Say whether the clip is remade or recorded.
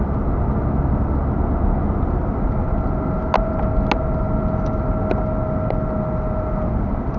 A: recorded